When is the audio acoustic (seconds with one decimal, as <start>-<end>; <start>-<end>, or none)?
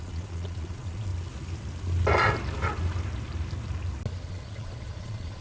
1.1-4.3